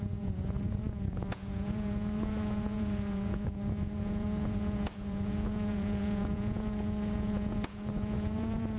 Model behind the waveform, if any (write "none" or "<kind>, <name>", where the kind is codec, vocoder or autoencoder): vocoder, Vocos